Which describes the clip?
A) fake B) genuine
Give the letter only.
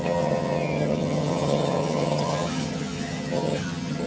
A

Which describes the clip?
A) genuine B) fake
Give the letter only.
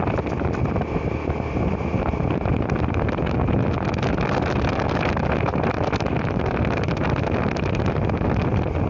A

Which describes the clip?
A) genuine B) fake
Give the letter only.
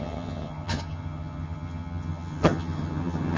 B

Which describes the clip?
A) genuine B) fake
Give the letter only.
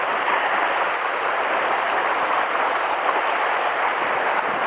A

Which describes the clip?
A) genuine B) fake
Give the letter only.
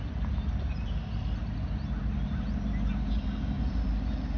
A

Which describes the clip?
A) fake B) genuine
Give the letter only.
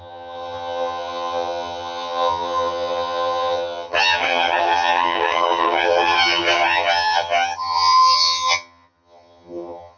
A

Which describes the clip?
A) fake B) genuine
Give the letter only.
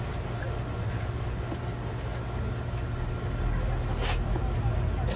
B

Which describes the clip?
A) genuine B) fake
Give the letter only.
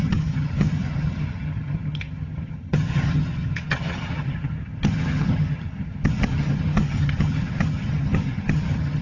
B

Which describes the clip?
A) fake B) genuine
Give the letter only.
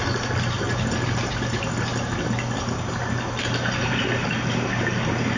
B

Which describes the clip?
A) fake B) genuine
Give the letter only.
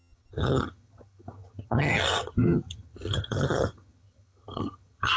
A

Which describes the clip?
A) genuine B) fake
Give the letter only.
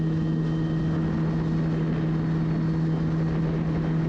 A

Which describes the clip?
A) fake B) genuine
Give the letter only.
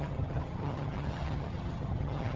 A